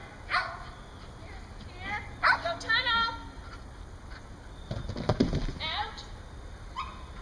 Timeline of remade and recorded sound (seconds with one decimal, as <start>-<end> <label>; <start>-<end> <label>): 0.0-7.2 recorded